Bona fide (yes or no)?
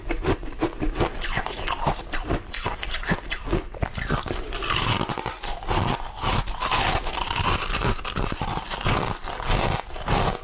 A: yes